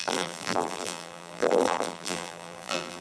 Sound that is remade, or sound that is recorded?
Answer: remade